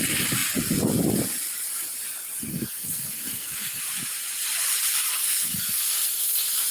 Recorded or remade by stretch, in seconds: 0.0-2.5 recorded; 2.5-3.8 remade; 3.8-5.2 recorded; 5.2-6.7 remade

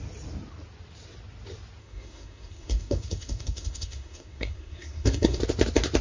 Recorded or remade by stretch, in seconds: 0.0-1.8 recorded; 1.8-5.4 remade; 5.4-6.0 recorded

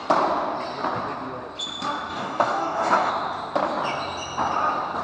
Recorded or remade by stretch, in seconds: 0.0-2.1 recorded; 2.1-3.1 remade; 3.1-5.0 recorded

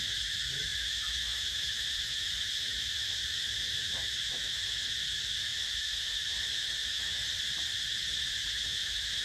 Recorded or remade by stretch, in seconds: 0.0-7.2 remade; 7.2-8.5 recorded; 8.5-9.2 remade

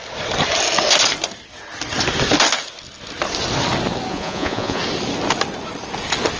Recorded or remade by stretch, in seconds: 0.0-4.1 recorded; 4.1-4.8 remade; 4.8-6.4 recorded

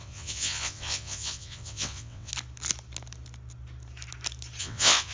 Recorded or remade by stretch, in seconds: 0.0-2.3 remade; 2.3-4.6 recorded; 4.6-5.1 remade

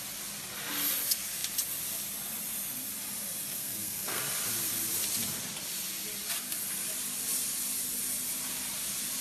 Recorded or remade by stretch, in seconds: 0.0-3.5 recorded; 3.5-4.2 remade; 4.2-9.2 recorded